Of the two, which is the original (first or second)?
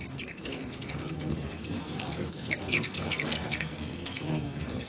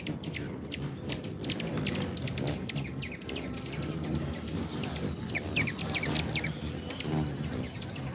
second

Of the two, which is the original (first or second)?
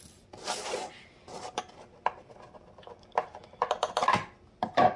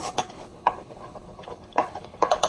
first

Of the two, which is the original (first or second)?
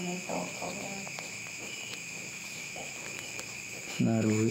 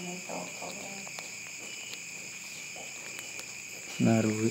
second